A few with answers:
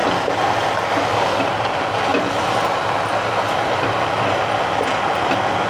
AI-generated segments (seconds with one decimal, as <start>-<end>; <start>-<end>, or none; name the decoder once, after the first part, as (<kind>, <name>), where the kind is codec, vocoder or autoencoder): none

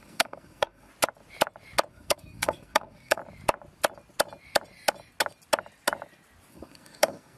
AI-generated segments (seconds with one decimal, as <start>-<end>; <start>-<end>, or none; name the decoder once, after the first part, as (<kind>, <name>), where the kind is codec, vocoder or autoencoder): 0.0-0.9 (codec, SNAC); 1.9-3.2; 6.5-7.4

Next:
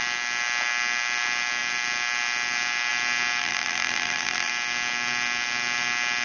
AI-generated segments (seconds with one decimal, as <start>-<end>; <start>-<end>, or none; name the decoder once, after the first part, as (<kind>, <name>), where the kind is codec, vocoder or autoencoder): 3.4-4.5 (vocoder, BigVGAN v2)